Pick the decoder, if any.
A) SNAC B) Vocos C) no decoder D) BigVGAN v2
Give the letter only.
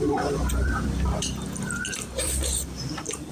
C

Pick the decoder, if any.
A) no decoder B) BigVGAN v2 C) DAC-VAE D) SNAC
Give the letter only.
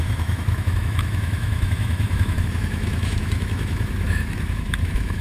C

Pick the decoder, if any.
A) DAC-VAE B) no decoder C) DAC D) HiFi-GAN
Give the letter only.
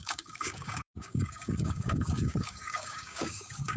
C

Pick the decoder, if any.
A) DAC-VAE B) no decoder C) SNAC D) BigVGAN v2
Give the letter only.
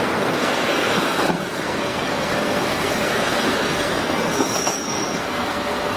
C